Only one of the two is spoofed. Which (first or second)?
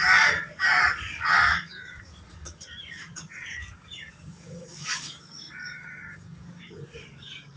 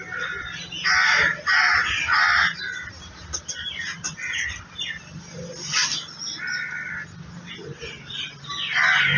first